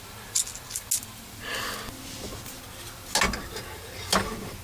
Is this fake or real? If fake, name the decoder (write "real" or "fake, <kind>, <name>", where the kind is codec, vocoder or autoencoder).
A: real